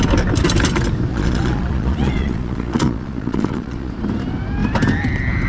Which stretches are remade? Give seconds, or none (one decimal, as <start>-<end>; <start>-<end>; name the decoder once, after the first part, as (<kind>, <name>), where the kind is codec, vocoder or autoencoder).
1.1-3.9 (vocoder, Vocos)